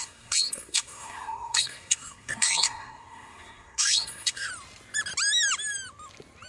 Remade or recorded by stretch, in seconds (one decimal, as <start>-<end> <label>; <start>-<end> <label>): 0.0-4.5 remade; 4.5-6.5 recorded